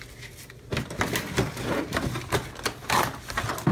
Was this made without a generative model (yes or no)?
no